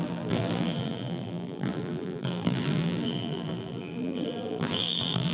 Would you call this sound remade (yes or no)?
yes